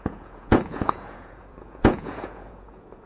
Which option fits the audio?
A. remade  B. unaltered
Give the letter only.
A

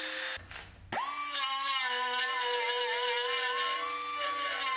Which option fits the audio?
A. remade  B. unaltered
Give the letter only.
B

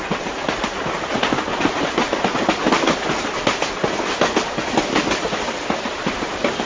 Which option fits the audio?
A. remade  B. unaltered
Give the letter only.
B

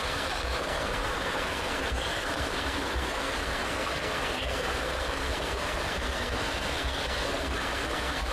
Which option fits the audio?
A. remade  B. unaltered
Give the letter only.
A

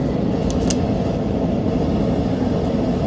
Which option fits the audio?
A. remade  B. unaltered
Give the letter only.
B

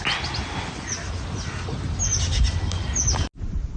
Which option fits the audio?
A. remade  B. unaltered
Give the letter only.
B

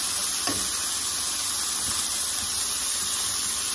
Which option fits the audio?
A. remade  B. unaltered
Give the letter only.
B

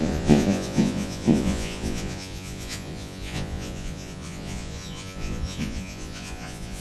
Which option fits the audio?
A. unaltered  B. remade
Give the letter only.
B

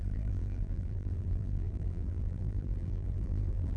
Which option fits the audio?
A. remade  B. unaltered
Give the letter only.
A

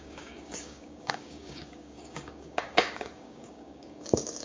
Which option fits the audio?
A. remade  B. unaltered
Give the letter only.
A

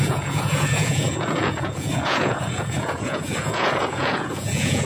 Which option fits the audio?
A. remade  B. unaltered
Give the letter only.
A